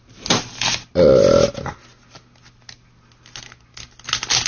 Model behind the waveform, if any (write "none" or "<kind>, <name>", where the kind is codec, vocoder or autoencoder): none